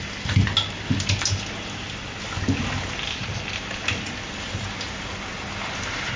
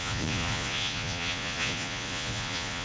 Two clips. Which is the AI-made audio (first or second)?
second